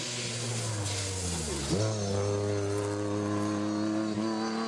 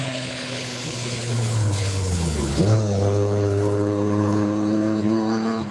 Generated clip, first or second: second